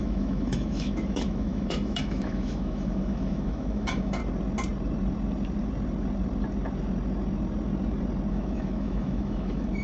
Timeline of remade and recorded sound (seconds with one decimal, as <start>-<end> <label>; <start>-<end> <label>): 0.0-4.2 remade; 4.2-8.3 recorded; 8.3-9.8 remade